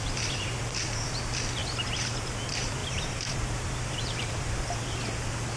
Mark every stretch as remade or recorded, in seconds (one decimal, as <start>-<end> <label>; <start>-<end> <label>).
0.0-1.6 recorded; 1.6-2.4 remade; 2.4-2.8 recorded; 2.8-4.2 remade; 4.2-5.6 recorded